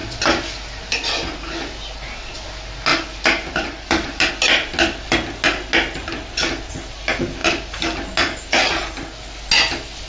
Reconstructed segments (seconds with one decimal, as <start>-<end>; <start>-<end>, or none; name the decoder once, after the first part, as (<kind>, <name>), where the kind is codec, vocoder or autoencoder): none

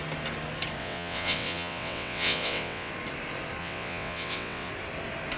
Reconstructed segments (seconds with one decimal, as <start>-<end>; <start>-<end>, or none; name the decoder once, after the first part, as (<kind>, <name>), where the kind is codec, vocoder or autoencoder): 0.8-2.9 (vocoder, WaveNeXt); 3.6-4.7

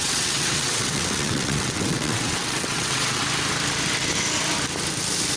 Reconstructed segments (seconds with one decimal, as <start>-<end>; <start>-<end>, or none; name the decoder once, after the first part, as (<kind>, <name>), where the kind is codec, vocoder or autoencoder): 0.0-3.2 (vocoder, WaveNeXt)

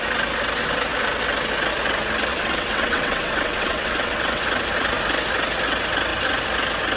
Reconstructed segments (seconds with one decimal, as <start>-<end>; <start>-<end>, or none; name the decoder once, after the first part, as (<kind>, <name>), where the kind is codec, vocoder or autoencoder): 2.3-4.4 (vocoder, WaveNeXt)

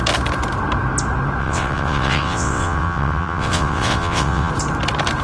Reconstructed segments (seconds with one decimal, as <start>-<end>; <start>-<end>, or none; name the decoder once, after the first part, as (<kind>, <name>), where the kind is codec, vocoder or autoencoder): 1.4-4.5 (vocoder, WaveNeXt)

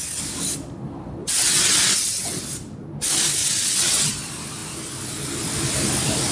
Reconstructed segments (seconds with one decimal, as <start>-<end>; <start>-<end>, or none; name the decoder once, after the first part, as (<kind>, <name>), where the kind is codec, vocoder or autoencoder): 1.2-2.4 (vocoder, WaveNeXt); 3.4-4.1

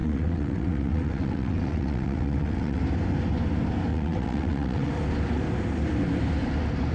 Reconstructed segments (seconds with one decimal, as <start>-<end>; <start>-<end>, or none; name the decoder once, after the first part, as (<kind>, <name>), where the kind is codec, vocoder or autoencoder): 0.0-2.8 (vocoder, WaveNeXt); 3.9-4.9

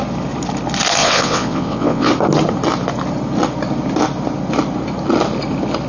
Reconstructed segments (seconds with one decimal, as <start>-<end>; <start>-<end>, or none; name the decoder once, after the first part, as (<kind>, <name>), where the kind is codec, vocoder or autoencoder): 1.0-2.1 (vocoder, WaveNeXt)